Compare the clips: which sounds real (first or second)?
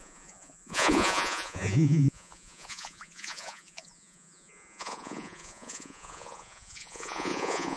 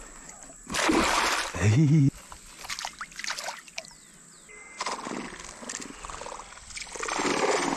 second